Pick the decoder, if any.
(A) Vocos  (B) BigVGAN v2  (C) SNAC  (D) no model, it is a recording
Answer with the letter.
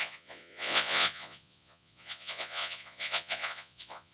A